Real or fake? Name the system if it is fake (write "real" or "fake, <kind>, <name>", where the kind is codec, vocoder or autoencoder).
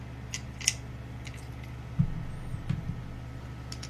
real